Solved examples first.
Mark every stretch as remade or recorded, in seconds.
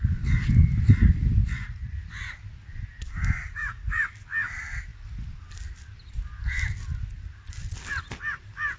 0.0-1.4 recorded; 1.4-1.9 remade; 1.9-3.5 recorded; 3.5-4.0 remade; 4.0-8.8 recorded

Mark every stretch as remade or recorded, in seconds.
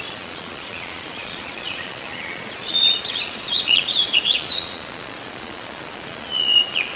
0.0-7.0 remade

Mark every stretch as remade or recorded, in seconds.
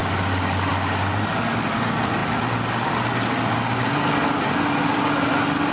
0.0-5.7 recorded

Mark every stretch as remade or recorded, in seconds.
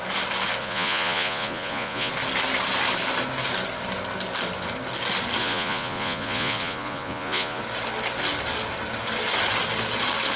0.0-0.6 recorded; 0.6-2.1 remade; 2.1-5.4 recorded; 5.4-7.6 remade; 7.6-10.4 recorded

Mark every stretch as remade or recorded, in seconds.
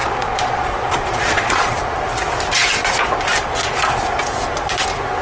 0.0-1.8 remade; 1.8-5.2 recorded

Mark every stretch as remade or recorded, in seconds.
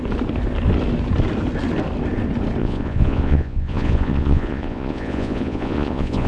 0.0-2.6 recorded; 2.6-6.3 remade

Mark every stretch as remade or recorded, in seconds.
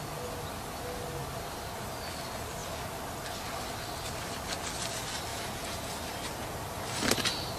0.0-5.3 recorded; 5.3-5.9 remade; 5.9-7.6 recorded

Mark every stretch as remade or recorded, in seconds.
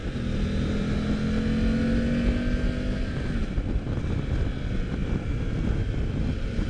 0.0-6.7 recorded